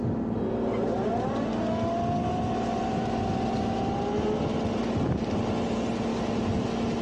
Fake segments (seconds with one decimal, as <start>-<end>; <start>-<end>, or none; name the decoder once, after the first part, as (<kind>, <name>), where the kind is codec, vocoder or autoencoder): none